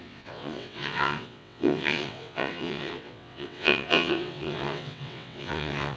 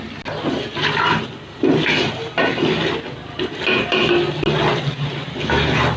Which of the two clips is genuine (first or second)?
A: second